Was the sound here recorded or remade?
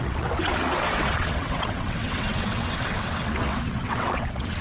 remade